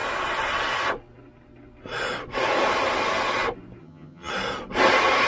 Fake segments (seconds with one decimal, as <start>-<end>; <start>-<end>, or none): 3.8-4.3